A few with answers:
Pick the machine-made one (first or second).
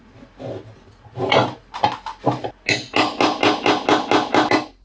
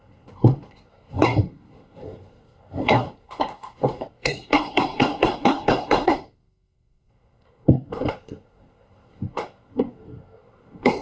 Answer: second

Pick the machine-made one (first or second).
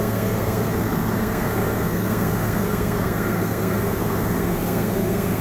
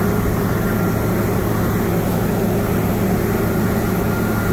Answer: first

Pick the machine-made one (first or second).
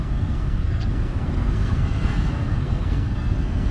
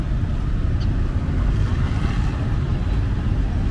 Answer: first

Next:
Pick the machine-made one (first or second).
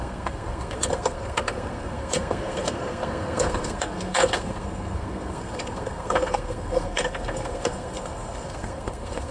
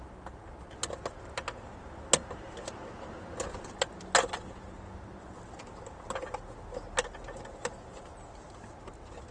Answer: first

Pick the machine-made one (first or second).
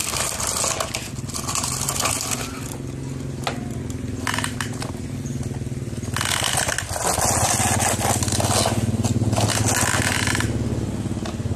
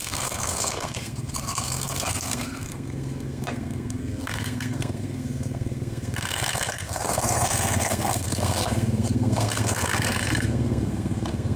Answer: second